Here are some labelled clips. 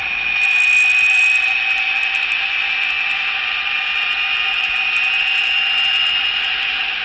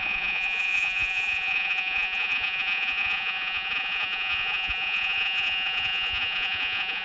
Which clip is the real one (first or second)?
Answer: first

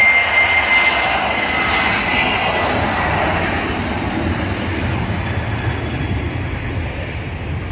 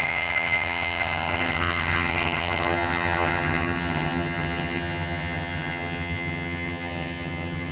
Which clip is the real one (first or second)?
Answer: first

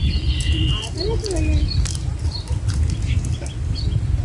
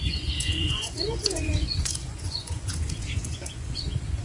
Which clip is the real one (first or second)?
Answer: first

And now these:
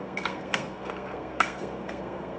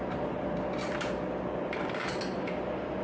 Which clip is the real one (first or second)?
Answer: second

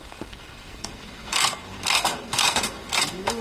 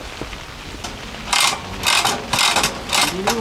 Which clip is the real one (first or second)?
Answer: second